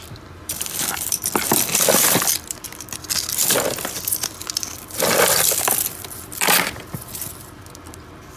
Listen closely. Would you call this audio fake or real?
fake